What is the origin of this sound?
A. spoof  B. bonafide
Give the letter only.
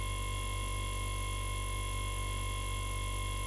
B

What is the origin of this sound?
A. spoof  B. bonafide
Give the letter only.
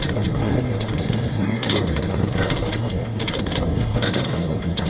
A